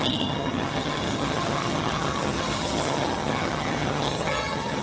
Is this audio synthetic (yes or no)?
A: yes